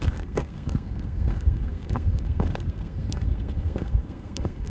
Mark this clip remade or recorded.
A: remade